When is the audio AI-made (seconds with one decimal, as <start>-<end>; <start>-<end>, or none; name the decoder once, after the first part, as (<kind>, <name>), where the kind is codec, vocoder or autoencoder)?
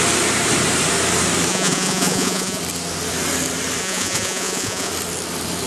1.5-2.6 (vocoder, Vocos); 3.8-4.9